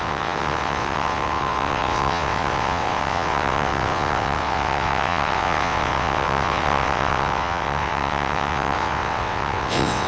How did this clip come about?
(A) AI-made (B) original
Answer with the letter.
A